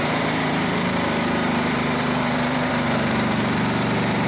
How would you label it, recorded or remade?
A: remade